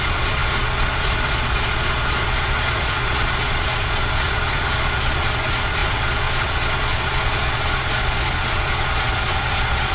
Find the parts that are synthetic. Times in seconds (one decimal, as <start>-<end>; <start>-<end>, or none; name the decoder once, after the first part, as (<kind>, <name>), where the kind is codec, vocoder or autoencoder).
0.0-9.9 (vocoder, Vocos)